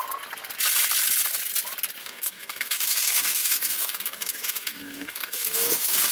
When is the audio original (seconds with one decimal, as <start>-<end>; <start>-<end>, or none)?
0.0-2.0